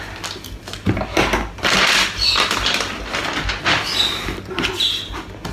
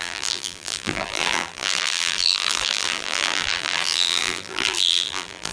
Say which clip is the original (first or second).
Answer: first